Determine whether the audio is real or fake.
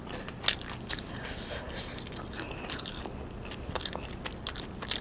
real